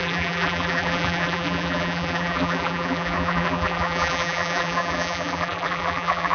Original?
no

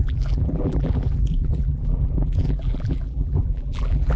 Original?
no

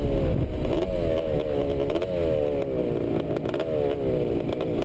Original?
yes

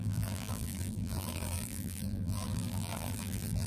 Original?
no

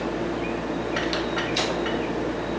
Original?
yes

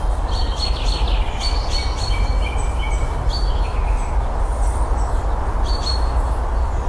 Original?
yes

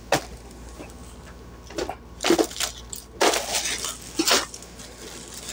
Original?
yes